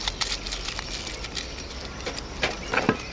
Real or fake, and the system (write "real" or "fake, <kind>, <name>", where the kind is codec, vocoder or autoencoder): real